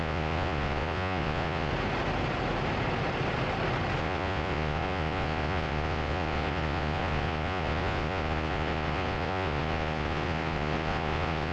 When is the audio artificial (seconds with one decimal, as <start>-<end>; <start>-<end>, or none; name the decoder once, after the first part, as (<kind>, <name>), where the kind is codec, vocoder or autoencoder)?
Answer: 0.0-1.7 (vocoder, Vocos); 4.0-11.5